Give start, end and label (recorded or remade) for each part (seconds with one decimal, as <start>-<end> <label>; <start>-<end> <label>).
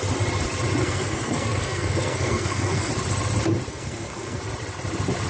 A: 0.0-0.8 recorded; 0.8-2.9 remade; 2.9-3.7 recorded; 3.7-4.4 remade; 4.4-5.3 recorded